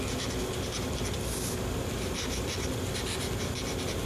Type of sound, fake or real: real